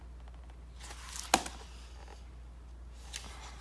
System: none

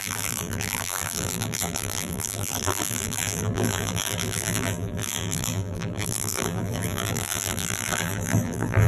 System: vocoder, BigVGAN v2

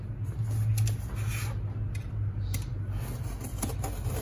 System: none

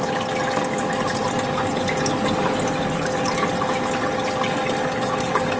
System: none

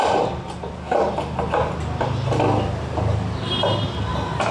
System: none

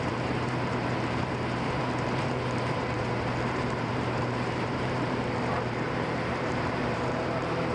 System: vocoder, BigVGAN v2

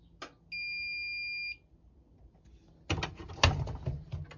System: none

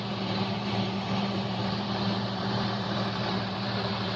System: vocoder, BigVGAN v2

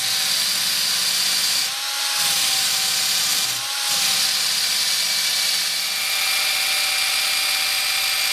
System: none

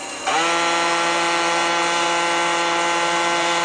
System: vocoder, BigVGAN v2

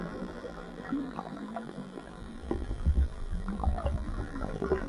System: vocoder, BigVGAN v2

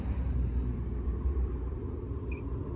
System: vocoder, BigVGAN v2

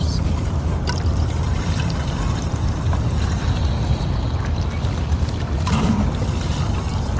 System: vocoder, BigVGAN v2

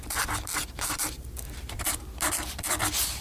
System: none